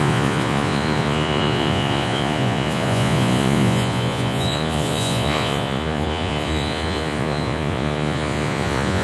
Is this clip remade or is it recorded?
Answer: remade